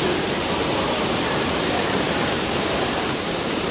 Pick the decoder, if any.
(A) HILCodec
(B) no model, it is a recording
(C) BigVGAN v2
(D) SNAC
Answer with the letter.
C